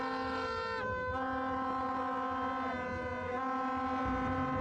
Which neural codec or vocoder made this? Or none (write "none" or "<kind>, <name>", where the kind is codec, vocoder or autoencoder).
none